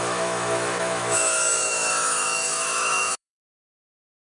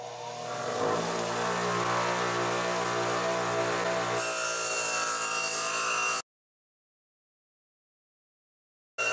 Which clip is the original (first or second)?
second